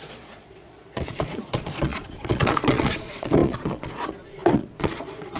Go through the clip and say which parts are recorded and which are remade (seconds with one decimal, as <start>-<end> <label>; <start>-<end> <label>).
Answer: 0.0-5.4 remade